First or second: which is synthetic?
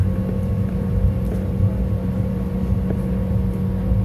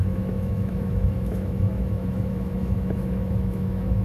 second